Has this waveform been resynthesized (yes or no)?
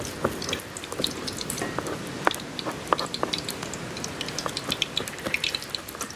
yes